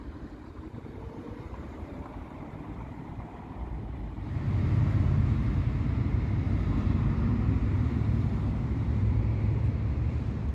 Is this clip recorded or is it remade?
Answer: remade